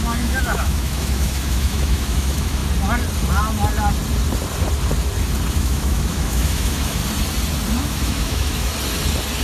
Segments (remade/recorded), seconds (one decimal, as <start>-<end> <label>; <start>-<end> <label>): 0.0-2.6 remade; 2.6-5.5 recorded; 5.5-7.0 remade; 7.0-7.8 recorded; 7.8-8.7 remade; 8.7-9.4 recorded